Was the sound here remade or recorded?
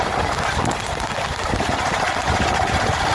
recorded